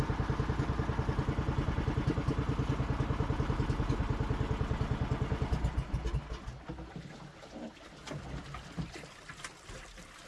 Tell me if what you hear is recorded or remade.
recorded